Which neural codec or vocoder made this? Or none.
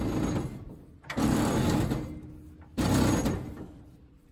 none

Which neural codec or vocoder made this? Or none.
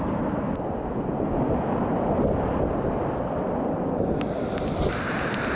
none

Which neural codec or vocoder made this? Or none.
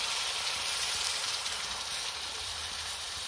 vocoder, BigVGAN v2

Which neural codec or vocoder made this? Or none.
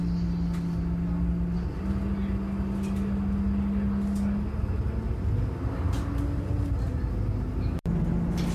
none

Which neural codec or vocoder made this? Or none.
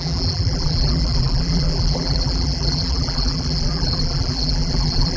vocoder, BigVGAN v2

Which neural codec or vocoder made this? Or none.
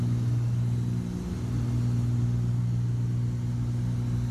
none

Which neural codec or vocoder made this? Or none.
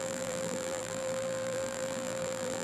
vocoder, BigVGAN v2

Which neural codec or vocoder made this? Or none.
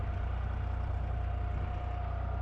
none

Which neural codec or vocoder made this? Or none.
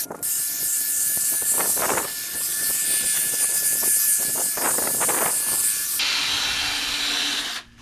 none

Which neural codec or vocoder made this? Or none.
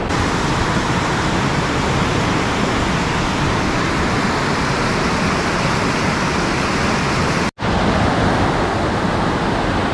none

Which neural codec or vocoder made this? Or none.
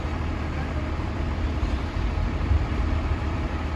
vocoder, BigVGAN v2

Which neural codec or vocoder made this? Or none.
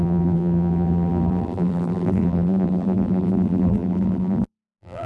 vocoder, BigVGAN v2